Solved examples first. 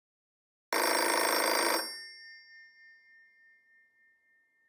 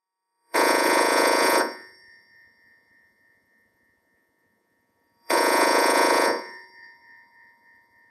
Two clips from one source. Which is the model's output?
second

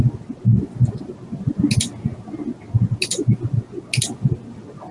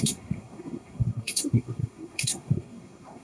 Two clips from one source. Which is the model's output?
second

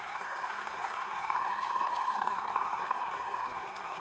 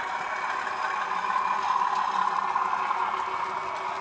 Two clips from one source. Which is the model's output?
first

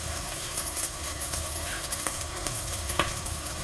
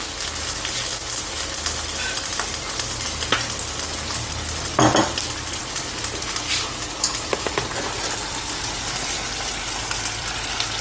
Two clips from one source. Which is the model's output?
first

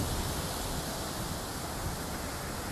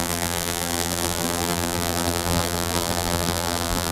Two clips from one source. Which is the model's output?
second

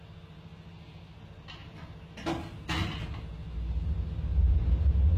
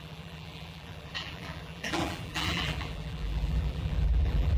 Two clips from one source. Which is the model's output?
second